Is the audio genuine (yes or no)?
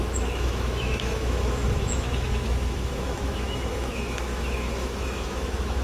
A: no